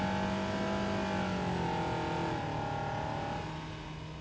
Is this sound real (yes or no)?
yes